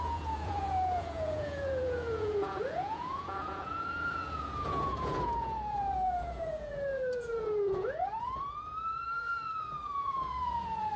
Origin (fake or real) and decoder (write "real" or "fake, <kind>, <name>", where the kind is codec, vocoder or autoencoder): fake, vocoder, Vocos